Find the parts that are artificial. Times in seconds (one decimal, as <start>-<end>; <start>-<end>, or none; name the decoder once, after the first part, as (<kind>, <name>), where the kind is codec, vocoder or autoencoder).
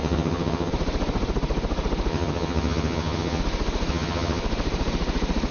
0.0-0.7 (vocoder, HiFi-GAN); 2.1-3.4; 3.9-4.4